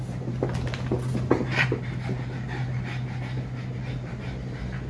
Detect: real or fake real